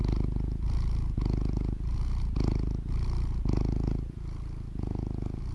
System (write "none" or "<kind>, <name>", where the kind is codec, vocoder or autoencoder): none